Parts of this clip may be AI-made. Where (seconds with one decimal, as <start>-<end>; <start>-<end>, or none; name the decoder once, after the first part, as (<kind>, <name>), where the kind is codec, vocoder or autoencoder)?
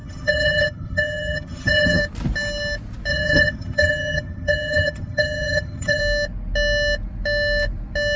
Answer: 0.0-2.0 (vocoder, HiFi-GAN); 3.1-6.0